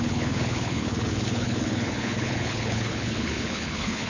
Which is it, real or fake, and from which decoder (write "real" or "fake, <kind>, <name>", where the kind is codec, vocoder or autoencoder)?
fake, codec, HILCodec